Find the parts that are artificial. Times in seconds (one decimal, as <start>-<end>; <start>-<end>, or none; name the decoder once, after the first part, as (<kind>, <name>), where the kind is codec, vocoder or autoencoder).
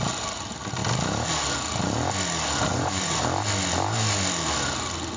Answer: 2.7-3.2 (vocoder, Vocos)